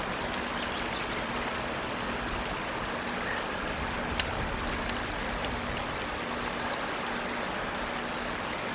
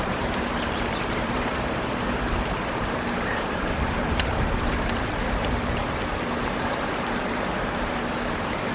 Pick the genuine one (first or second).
first